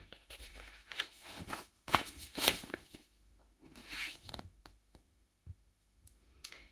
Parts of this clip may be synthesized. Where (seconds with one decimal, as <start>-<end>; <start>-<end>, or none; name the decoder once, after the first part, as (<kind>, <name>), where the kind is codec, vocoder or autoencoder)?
0.0-6.7 (autoencoder, DAC-VAE)